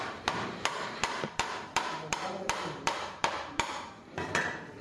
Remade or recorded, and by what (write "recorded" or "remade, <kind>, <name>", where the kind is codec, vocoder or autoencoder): remade, vocoder, BigVGAN v2